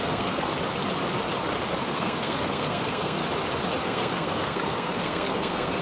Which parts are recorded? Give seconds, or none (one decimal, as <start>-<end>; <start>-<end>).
0.5-1.8; 3.2-3.8